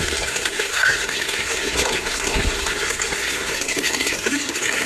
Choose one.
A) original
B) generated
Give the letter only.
B